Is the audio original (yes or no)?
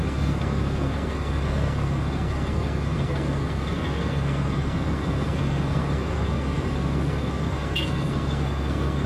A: no